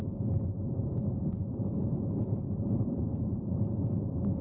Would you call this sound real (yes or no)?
no